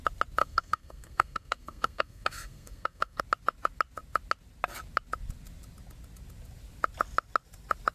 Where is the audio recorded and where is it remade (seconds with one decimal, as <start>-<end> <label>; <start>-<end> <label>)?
0.0-0.4 recorded; 0.4-3.2 remade; 3.2-7.9 recorded